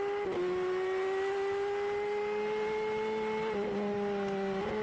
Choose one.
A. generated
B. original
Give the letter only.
B